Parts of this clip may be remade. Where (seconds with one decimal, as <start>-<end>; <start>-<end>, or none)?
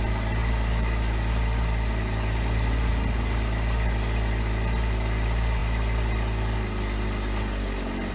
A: none